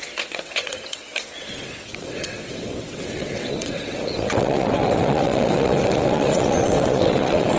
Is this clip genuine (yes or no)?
no